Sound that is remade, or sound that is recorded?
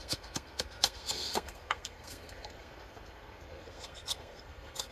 remade